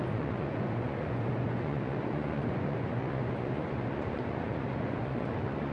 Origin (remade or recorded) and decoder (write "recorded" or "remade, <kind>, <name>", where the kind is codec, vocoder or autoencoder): remade, vocoder, Vocos